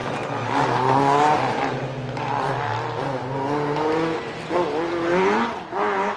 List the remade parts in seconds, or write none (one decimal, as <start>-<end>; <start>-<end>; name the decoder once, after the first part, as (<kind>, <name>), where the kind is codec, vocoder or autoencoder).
none